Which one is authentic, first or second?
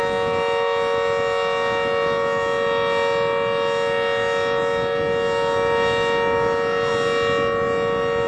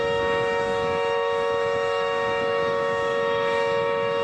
first